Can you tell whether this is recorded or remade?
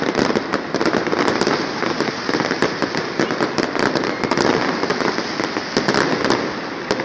recorded